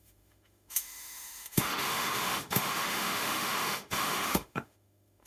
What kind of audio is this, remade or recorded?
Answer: remade